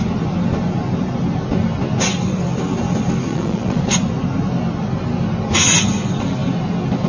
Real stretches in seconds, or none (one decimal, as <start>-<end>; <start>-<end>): 0.0-3.3; 3.8-7.1